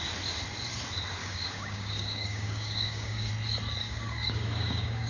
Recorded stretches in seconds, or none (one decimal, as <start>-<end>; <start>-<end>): 0.0-1.2; 3.3-3.8